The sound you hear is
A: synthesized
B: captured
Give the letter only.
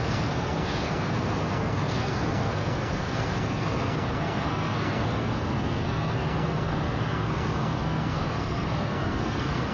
A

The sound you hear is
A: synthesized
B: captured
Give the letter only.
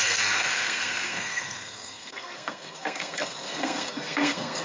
A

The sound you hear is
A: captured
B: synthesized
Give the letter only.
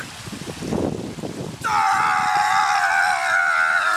A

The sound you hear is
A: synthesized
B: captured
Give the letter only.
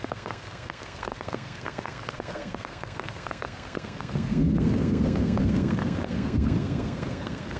A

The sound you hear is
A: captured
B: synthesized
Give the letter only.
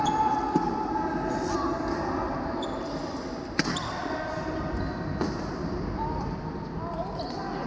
A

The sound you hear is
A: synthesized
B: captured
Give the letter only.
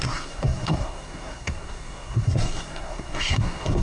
A